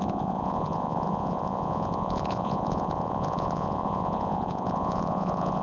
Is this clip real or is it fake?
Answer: fake